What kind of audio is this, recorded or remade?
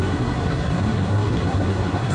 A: remade